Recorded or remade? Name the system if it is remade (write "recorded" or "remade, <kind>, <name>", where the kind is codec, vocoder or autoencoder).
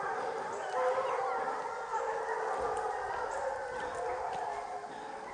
recorded